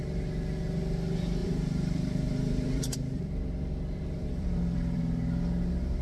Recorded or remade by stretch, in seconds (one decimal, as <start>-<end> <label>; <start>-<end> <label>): 0.0-1.4 recorded; 1.4-5.0 remade; 5.0-6.0 recorded